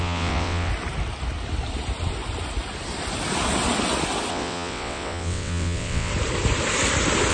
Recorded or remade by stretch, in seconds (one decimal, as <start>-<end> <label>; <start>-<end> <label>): 0.0-0.7 remade; 0.7-4.3 recorded; 4.3-6.1 remade; 6.1-7.3 recorded